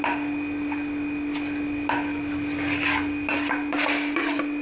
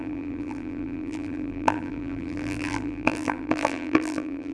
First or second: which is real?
first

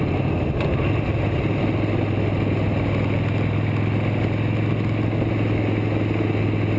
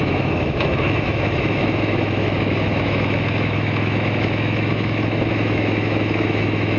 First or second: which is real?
first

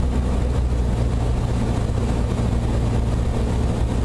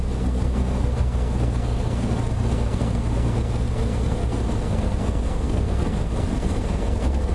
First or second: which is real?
first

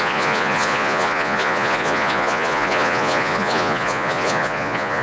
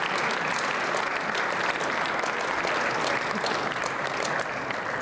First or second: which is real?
second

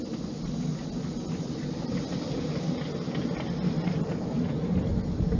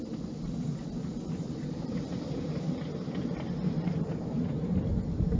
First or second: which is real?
first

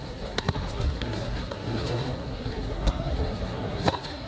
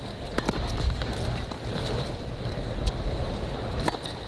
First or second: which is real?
second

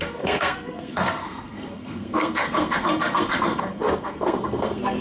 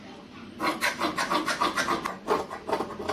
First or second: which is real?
second